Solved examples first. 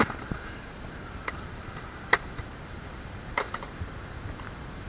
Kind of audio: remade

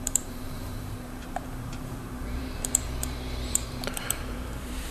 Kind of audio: remade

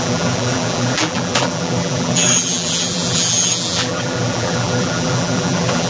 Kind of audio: remade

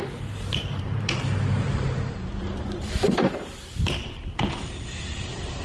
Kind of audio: remade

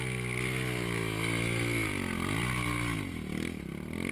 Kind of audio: recorded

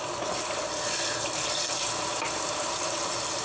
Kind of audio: recorded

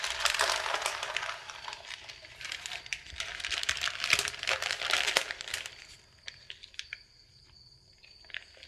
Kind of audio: remade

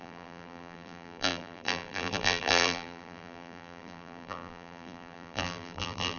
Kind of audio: remade